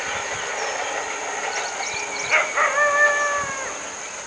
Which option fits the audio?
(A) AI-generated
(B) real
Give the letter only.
B